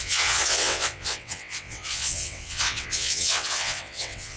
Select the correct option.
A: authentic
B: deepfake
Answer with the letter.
B